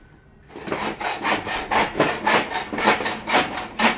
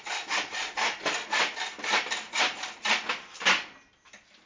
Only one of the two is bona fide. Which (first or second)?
first